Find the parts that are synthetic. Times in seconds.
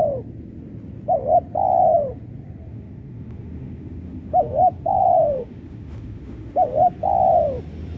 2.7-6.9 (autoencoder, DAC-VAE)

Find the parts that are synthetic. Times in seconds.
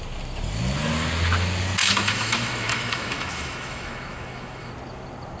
1.8-4.7 (autoencoder, DAC-VAE)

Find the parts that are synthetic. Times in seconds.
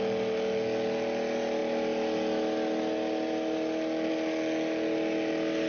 none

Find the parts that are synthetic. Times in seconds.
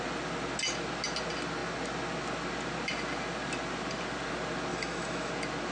4.7-5.3 (autoencoder, DAC-VAE)